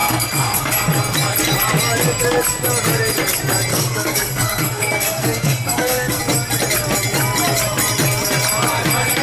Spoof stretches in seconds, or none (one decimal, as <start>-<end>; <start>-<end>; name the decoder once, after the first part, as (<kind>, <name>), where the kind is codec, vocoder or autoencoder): 0.0-0.7 (codec, SNAC); 3.7-6.2